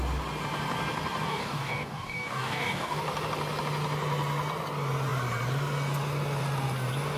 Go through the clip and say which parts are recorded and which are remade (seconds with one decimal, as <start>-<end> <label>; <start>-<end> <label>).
0.0-1.3 recorded; 1.3-3.0 remade; 3.0-7.2 recorded